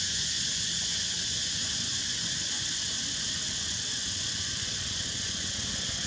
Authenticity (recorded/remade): remade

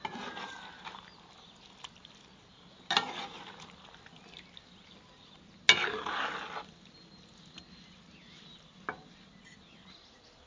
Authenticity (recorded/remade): recorded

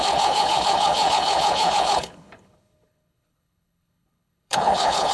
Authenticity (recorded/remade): remade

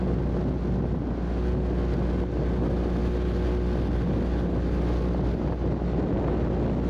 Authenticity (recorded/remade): recorded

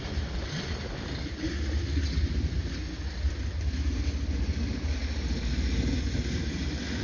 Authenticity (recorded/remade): recorded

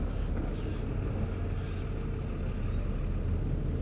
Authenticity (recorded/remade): recorded